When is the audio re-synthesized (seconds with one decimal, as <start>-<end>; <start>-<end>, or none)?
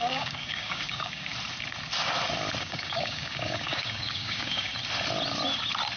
0.0-1.3; 2.6-4.7